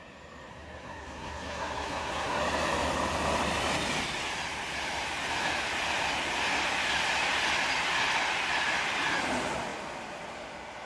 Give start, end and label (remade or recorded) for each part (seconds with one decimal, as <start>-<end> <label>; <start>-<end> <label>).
0.0-0.5 recorded; 0.5-2.4 remade; 2.4-10.9 recorded